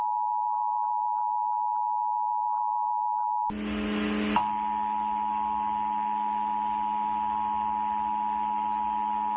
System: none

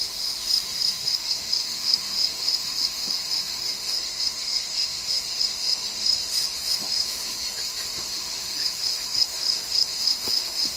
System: autoencoder, DAC-VAE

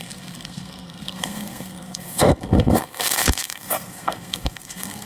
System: codec, SNAC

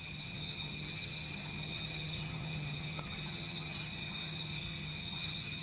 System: vocoder, HiFi-GAN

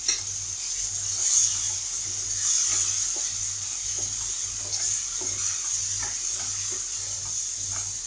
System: none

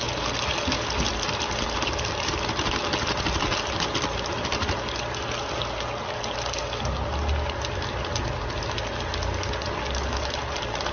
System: none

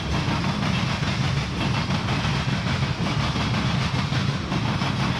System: none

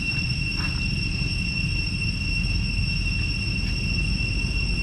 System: none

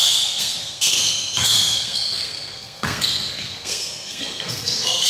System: codec, SNAC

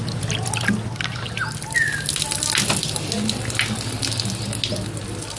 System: none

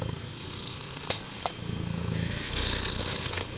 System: codec, SNAC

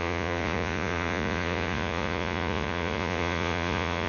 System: vocoder, Vocos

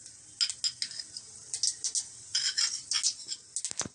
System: none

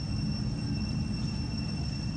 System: none